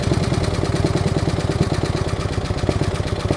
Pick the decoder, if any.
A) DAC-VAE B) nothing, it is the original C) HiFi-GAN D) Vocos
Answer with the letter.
B